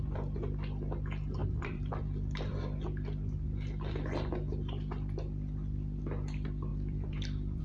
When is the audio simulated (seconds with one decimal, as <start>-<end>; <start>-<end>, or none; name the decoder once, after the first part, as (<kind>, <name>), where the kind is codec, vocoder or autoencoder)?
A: 1.4-2.6 (vocoder, BigVGAN v2); 6.7-7.6